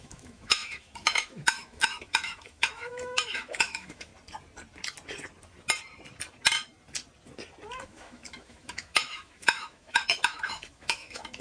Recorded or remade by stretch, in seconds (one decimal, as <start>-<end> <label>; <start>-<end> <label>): 0.0-4.1 remade; 4.1-7.8 recorded; 7.8-11.4 remade